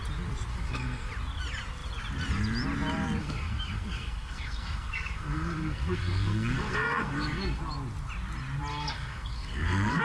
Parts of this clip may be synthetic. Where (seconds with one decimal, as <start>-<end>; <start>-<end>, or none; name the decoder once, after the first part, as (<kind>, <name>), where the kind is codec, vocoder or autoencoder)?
0.5-1.1 (codec, SNAC); 3.2-7.6; 8.7-10.0